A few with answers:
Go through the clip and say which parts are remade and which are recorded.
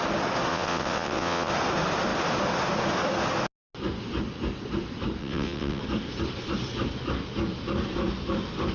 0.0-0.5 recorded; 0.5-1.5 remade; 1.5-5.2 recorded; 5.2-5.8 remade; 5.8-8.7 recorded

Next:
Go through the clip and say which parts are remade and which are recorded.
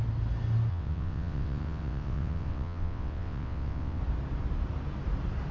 0.0-0.7 recorded; 0.7-4.0 remade; 4.0-5.5 recorded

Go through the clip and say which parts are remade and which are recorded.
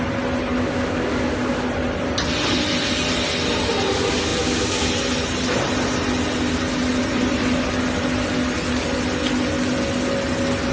0.0-10.7 recorded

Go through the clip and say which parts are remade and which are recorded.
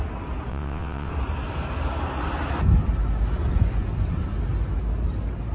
0.0-0.5 recorded; 0.5-1.1 remade; 1.1-5.5 recorded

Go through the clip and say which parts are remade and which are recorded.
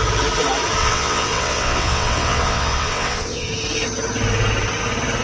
0.0-0.8 recorded; 0.8-3.5 remade; 3.5-5.2 recorded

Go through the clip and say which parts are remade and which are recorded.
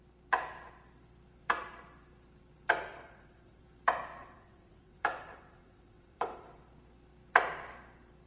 0.0-2.9 recorded; 2.9-3.6 remade; 3.6-4.2 recorded; 4.2-6.6 remade; 6.6-8.3 recorded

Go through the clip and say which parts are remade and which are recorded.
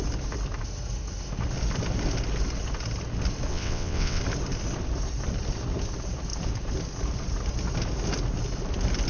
0.0-3.5 recorded; 3.5-4.2 remade; 4.2-9.1 recorded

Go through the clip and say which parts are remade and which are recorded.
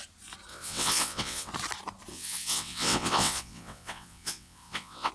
0.0-0.5 recorded; 0.5-1.5 remade; 1.5-2.1 recorded; 2.1-5.1 remade